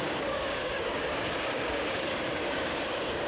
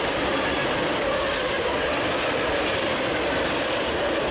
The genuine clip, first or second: second